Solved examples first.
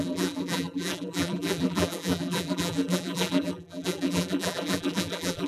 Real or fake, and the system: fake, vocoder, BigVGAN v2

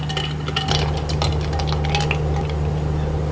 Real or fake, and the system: real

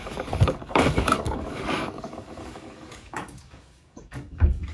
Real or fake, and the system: fake, codec, DAC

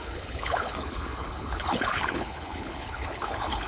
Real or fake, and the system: fake, codec, HILCodec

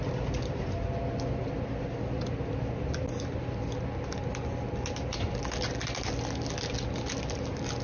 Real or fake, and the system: real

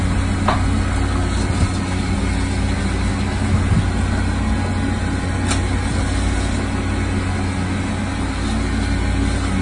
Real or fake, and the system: real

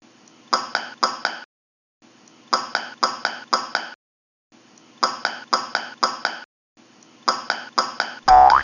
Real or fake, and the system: real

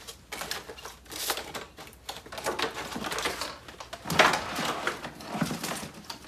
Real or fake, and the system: real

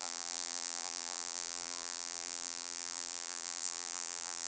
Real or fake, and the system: fake, vocoder, BigVGAN v2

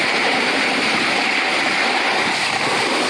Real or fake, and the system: real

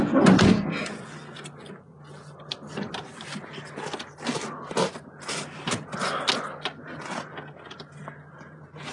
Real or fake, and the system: real